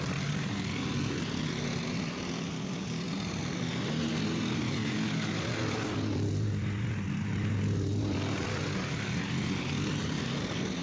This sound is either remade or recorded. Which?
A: recorded